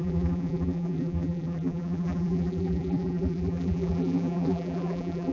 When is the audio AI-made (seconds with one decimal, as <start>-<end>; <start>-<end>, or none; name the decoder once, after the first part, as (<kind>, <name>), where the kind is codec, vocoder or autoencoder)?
0.0-5.3 (vocoder, BigVGAN v2)